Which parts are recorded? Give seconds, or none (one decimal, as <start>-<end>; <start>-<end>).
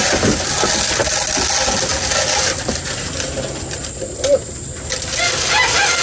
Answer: 0.0-6.0